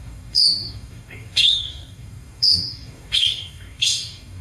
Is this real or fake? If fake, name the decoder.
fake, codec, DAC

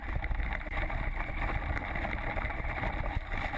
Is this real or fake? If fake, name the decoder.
real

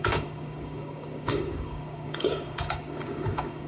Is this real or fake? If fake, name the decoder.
fake, codec, DAC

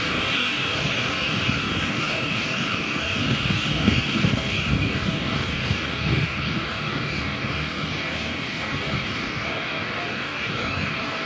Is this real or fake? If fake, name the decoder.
fake, codec, DAC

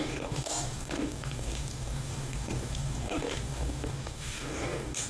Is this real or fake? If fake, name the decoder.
fake, codec, DAC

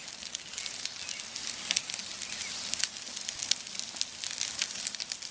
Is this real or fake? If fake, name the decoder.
real